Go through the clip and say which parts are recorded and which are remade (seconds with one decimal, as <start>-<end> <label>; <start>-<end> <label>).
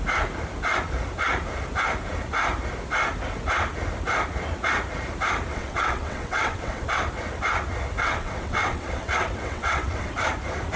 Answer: 0.0-5.5 recorded; 5.5-7.0 remade; 7.0-8.0 recorded; 8.0-10.1 remade; 10.1-10.8 recorded